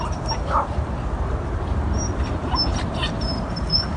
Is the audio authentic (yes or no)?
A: no